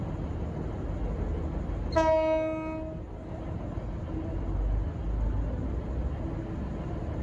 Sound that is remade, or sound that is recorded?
recorded